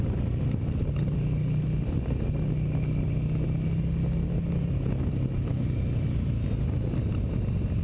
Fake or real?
real